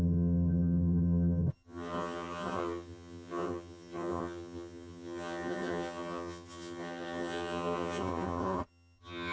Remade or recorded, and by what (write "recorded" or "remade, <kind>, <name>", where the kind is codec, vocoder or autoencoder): remade, vocoder, HiFi-GAN